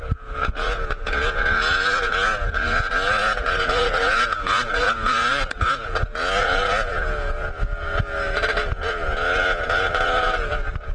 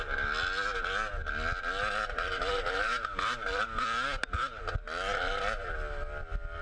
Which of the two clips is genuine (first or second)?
second